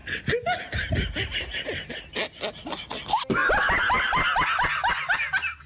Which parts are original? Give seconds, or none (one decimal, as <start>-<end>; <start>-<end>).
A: 0.0-5.7

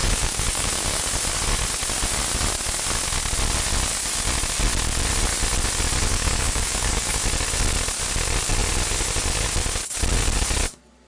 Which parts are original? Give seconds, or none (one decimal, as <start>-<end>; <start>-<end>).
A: 1.0-6.1; 7.2-11.1

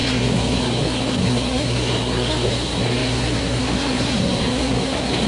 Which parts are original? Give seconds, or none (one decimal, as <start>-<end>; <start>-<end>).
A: none

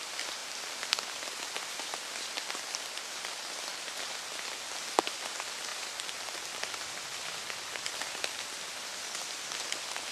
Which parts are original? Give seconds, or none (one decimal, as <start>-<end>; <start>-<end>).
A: 0.0-10.1

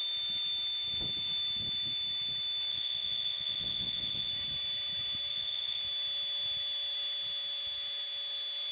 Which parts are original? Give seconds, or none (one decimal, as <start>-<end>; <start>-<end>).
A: 0.0-2.7; 4.3-5.3; 5.8-8.7

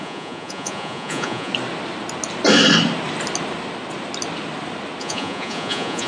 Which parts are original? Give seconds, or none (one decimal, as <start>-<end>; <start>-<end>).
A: 1.5-5.0

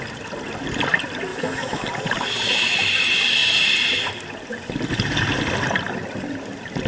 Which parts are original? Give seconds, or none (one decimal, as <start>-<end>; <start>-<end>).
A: 0.0-1.3; 1.9-6.9